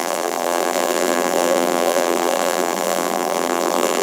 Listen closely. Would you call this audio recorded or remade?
remade